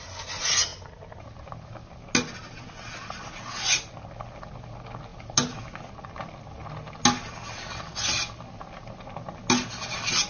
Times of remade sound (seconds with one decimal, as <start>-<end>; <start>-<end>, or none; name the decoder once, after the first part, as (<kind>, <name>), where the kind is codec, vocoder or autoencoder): none